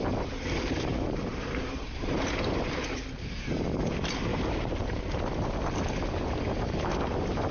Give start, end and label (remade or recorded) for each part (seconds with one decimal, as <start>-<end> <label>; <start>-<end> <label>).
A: 0.0-0.9 recorded; 0.9-2.1 remade; 2.1-4.3 recorded; 4.3-5.1 remade; 5.1-7.5 recorded